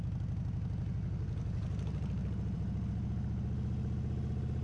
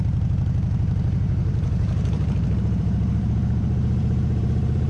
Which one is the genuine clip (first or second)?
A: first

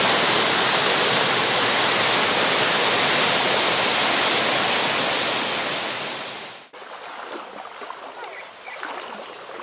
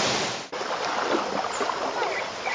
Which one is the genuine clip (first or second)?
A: first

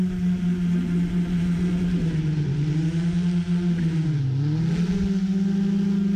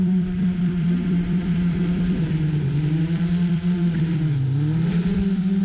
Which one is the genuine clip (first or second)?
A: first